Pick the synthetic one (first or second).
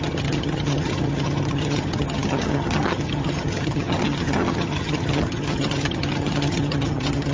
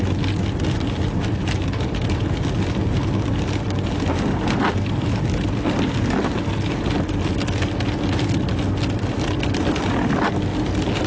first